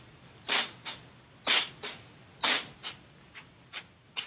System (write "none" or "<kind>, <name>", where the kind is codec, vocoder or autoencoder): none